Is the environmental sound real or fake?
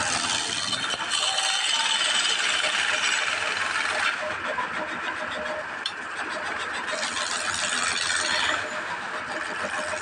real